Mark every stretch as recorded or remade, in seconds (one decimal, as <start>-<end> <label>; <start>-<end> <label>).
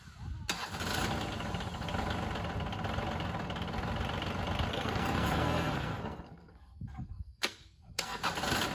0.0-4.7 recorded; 4.7-8.2 remade; 8.2-8.7 recorded